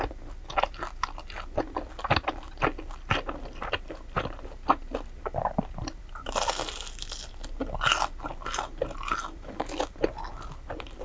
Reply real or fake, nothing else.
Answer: real